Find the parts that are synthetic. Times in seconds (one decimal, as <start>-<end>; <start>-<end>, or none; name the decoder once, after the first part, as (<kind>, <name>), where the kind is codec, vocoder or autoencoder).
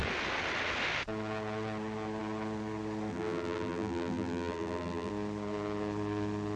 3.1-5.1 (vocoder, BigVGAN v2)